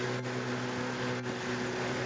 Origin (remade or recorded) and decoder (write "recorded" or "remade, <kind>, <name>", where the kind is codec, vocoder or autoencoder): recorded